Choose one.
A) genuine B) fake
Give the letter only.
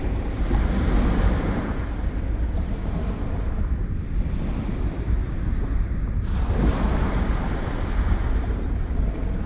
B